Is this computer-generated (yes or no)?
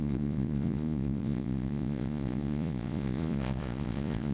yes